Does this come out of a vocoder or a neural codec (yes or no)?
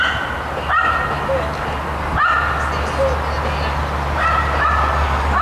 no